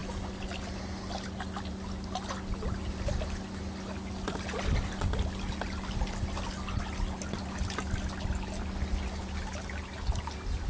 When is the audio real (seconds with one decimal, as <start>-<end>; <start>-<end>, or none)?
0.0-10.7